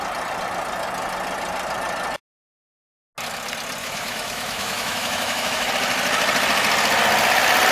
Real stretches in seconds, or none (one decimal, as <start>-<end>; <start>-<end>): 0.0-3.8; 5.7-7.7